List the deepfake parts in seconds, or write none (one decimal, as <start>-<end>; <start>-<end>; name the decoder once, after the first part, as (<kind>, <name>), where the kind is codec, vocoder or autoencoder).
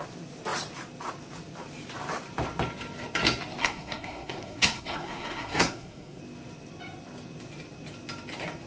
3.6-6.2 (codec, SNAC)